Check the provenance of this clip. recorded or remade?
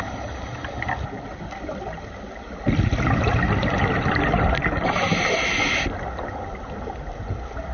recorded